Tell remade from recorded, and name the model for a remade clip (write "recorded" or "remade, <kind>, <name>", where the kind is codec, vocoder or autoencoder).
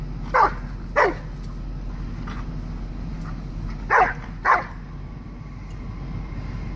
recorded